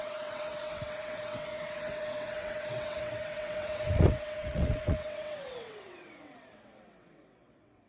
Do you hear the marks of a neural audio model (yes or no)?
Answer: yes